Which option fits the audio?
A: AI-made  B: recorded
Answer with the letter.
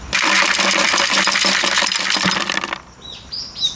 B